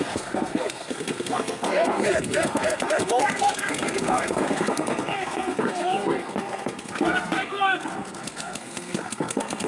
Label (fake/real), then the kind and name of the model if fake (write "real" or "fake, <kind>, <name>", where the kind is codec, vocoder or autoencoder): fake, codec, SNAC